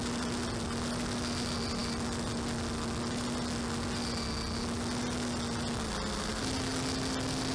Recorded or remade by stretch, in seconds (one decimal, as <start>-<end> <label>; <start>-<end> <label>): 0.0-7.5 recorded